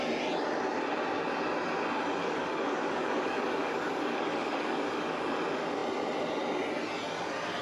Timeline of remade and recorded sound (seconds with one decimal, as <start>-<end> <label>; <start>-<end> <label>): 0.0-2.2 recorded; 2.2-5.3 remade; 5.3-7.6 recorded